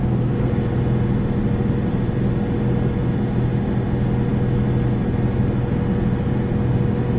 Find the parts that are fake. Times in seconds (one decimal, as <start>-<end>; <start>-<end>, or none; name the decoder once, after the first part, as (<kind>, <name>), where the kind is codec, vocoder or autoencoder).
0.0-0.5 (codec, SNAC)

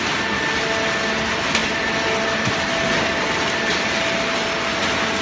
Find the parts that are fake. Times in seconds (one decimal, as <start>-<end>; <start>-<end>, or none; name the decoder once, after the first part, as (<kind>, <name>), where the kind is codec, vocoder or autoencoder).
none

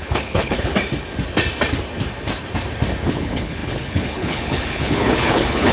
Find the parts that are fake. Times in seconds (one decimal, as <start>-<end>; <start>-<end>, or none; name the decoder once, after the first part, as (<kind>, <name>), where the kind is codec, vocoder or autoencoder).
0.0-0.7 (codec, HILCodec); 3.1-5.7

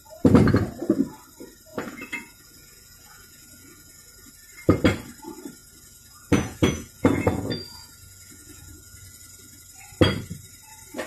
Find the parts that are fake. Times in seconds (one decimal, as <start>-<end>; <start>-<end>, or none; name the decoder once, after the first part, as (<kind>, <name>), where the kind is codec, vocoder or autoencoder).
1.7-4.3 (vocoder, Vocos); 5.6-9.6

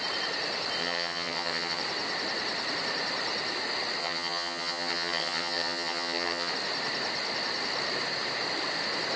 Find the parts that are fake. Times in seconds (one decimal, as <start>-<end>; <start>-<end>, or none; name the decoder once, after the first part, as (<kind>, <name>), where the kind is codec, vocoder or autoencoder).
0.8-1.8 (vocoder, HiFi-GAN); 4.0-6.5

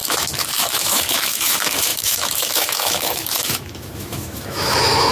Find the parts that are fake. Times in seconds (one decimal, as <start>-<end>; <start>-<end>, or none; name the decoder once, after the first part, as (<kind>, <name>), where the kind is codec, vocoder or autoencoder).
0.0-5.1 (autoencoder, DAC-VAE)